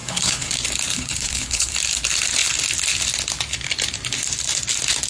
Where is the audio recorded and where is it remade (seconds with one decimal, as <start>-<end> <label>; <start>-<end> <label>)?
0.0-0.5 remade; 0.5-0.9 recorded; 0.9-1.7 remade; 1.7-5.1 recorded